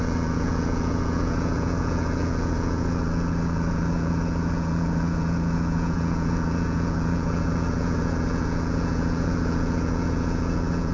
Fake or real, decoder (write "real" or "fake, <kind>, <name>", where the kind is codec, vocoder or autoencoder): fake, vocoder, Vocos